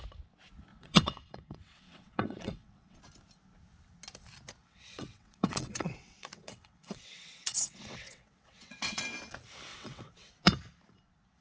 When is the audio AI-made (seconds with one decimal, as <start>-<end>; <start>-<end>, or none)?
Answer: 0.7-3.0; 4.6-9.0; 9.7-10.3